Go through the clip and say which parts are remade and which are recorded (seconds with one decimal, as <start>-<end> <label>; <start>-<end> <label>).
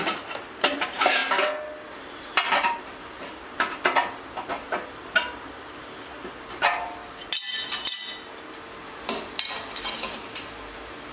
0.0-1.2 remade; 1.2-1.9 recorded; 1.9-7.0 remade; 7.0-8.9 recorded; 8.9-11.1 remade